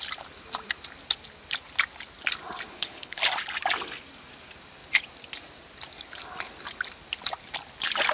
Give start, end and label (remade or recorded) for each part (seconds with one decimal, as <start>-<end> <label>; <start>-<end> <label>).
0.0-2.7 recorded; 2.7-3.2 remade; 3.2-8.1 recorded